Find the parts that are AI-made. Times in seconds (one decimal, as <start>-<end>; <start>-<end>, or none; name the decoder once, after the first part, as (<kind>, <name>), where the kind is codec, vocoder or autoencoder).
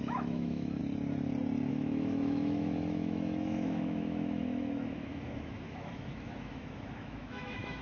0.0-0.8 (autoencoder, DAC-VAE); 1.7-7.8